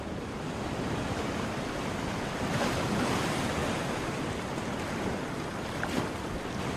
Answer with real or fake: fake